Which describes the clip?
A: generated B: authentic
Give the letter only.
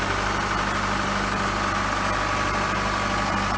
B